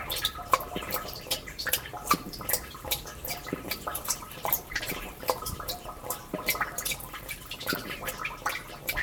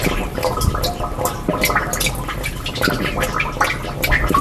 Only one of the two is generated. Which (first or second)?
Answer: first